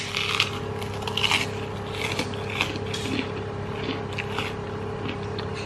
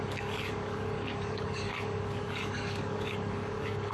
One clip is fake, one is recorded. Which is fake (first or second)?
second